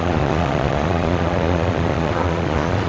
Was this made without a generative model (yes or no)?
no